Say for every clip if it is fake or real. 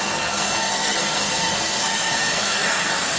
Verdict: fake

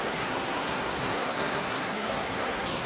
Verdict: fake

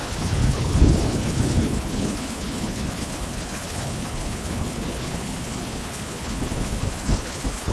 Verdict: fake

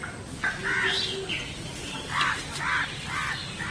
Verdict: real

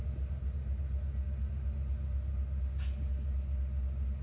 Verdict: real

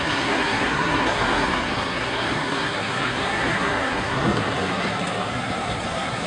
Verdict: fake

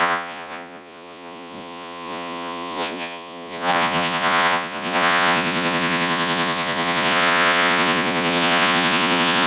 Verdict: fake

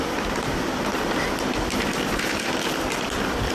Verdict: real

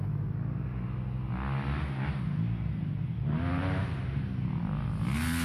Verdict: real